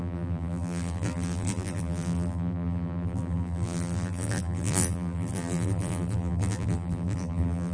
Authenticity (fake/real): fake